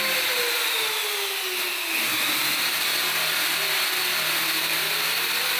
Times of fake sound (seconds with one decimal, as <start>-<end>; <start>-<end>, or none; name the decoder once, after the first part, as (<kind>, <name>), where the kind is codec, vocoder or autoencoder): 2.1-5.6 (vocoder, BigVGAN v2)